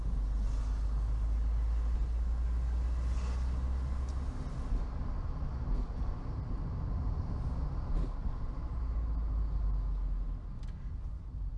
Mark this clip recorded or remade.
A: recorded